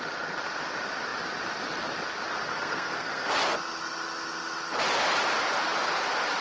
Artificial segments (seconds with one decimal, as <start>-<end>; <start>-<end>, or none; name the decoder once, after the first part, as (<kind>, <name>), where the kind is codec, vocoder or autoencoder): 2.5-3.3 (codec, SNAC)